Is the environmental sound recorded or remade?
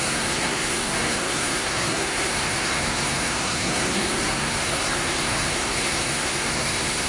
remade